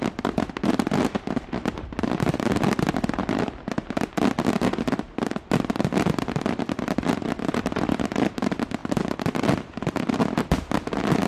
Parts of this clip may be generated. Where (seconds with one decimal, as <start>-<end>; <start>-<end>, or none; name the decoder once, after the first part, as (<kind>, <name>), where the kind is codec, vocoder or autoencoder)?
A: none